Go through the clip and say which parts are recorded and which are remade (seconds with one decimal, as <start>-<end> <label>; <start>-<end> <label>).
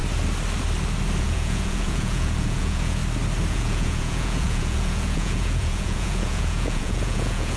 0.0-1.2 recorded; 1.2-3.0 remade; 3.0-3.5 recorded; 3.5-7.6 remade